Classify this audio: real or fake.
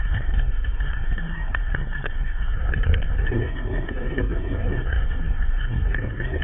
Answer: fake